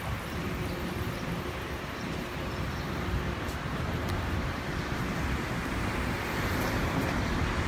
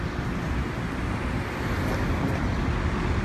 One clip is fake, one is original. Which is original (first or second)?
second